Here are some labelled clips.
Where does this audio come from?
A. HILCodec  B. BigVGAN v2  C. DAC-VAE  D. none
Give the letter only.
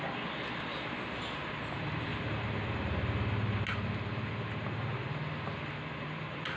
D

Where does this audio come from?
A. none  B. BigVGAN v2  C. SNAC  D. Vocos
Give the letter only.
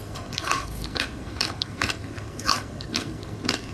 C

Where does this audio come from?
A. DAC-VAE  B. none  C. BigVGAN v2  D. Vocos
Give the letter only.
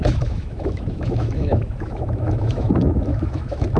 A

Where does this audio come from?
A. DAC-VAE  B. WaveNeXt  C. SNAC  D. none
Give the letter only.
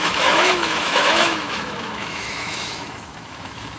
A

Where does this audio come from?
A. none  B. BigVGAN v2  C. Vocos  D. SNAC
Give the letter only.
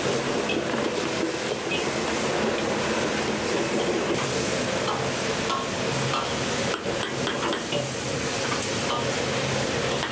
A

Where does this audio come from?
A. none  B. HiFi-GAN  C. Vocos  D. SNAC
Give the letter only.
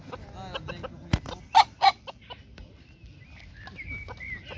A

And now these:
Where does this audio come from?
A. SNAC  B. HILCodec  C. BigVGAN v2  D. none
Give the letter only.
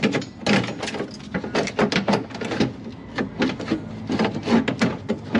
D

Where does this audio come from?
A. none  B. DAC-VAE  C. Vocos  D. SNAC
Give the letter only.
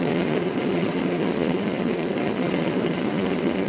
C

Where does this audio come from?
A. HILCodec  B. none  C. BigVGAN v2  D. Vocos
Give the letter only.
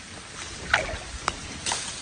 B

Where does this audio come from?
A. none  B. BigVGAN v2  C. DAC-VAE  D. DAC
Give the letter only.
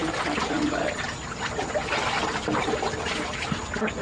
A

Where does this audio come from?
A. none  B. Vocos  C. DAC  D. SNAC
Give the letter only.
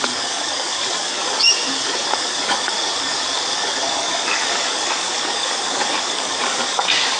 C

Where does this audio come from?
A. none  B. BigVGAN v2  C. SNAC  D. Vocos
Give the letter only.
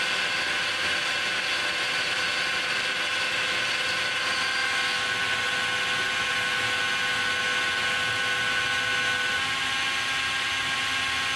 A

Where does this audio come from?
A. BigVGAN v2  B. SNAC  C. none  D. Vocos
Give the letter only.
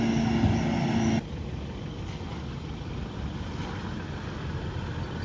C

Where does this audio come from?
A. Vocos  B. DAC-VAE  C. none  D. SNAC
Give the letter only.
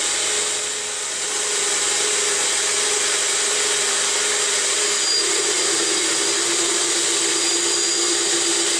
C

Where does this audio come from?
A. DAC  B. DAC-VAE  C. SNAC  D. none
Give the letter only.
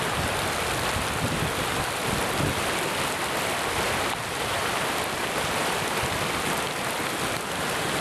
D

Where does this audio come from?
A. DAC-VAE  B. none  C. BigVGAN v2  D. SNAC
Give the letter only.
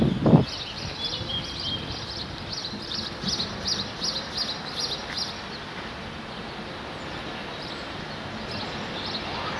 B